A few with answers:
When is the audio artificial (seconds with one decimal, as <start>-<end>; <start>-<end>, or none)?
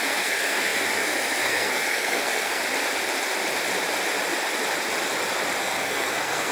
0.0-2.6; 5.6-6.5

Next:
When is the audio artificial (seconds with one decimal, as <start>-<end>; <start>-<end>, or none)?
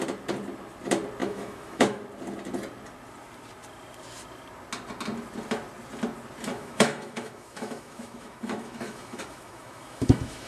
1.2-2.0; 6.5-10.5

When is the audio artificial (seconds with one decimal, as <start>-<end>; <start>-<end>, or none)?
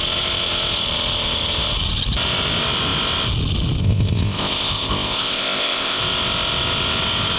3.8-6.0